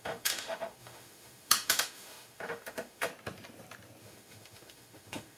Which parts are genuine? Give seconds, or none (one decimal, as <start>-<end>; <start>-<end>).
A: 3.1-4.0